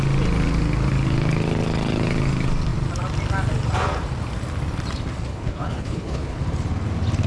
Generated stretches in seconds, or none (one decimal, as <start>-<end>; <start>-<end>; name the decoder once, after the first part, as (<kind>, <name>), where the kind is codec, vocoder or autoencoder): 5.3-6.4 (codec, HILCodec)